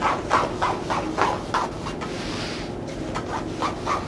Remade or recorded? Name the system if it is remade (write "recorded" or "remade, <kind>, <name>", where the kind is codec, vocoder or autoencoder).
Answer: recorded